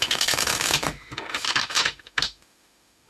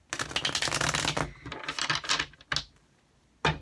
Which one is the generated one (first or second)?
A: first